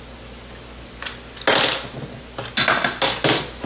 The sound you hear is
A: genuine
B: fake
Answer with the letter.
A